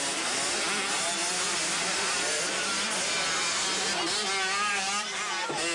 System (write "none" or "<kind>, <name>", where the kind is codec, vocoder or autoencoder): none